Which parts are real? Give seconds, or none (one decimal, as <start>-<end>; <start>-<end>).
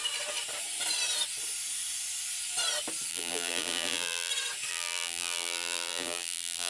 0.0-3.1; 4.3-4.7